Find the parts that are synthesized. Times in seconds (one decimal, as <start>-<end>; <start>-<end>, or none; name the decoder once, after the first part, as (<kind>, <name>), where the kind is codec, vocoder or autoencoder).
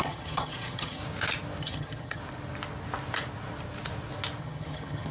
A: 0.0-1.0 (vocoder, HiFi-GAN); 1.6-2.2; 4.4-5.1